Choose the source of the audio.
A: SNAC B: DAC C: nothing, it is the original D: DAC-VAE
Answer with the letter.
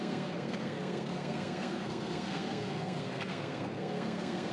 A